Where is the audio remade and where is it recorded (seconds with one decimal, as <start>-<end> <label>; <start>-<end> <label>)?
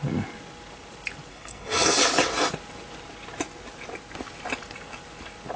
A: 0.0-1.3 recorded; 1.3-2.0 remade; 2.0-5.6 recorded